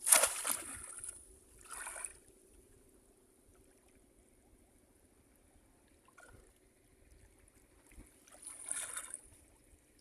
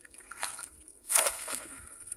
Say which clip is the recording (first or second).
first